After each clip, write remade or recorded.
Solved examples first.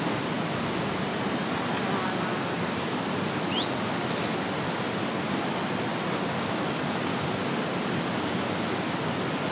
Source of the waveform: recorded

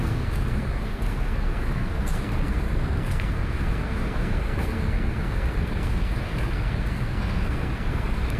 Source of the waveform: remade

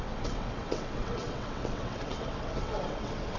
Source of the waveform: remade